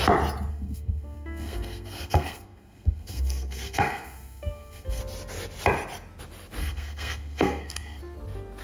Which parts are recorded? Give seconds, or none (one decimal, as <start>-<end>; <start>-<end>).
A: 0.0-0.5; 5.0-6.6; 8.0-8.6